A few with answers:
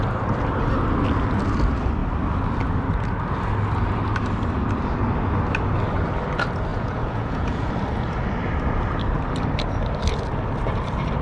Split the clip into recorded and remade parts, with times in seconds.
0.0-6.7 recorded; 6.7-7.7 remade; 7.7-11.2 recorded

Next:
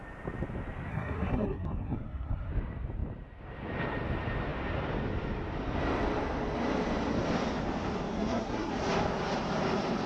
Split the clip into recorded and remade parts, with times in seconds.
0.0-0.9 recorded; 0.9-2.5 remade; 2.5-8.1 recorded; 8.1-8.7 remade; 8.7-10.1 recorded

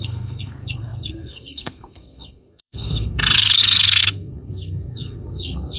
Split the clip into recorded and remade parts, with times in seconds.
0.0-5.8 remade